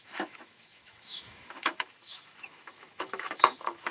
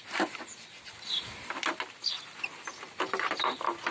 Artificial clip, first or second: first